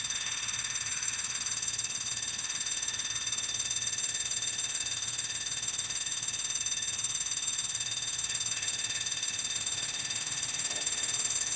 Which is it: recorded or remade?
remade